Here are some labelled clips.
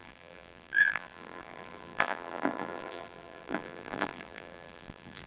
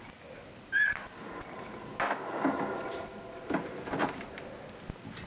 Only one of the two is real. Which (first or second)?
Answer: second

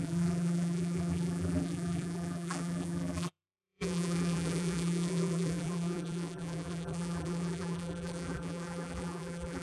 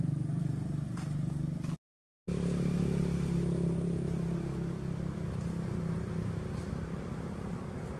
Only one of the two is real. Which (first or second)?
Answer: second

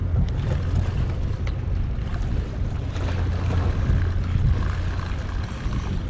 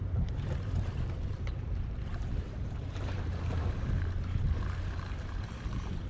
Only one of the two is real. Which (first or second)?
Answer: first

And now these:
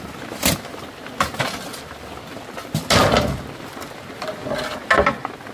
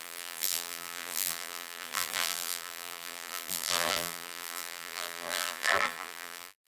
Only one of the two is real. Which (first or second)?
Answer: first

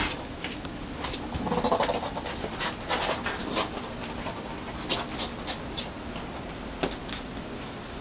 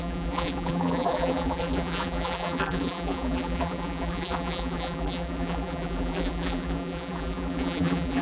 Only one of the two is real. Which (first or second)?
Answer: first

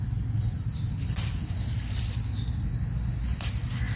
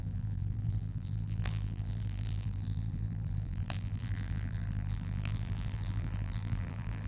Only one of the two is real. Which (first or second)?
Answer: first